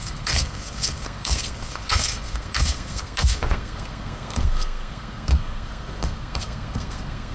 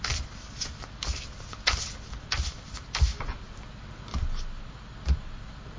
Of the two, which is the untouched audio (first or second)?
second